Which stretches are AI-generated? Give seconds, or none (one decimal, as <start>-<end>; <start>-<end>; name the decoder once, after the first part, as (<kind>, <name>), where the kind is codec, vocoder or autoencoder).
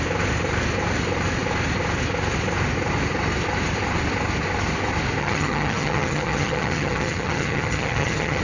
5.2-8.4 (vocoder, HiFi-GAN)